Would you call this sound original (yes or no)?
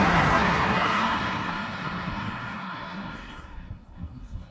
no